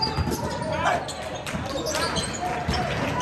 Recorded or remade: recorded